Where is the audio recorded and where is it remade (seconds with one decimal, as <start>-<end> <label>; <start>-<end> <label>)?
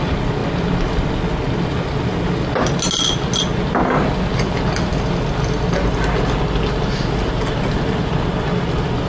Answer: 0.0-9.1 recorded